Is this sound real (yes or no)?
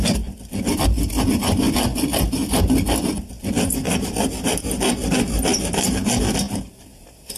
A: yes